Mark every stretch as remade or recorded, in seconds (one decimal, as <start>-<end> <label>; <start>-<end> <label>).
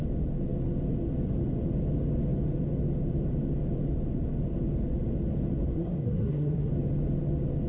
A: 0.0-5.7 recorded; 5.7-6.7 remade; 6.7-7.7 recorded